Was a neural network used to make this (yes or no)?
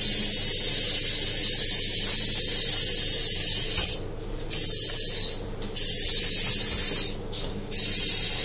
no